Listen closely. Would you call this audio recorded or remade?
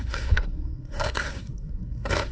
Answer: remade